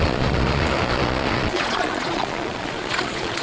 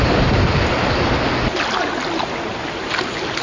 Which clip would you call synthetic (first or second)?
first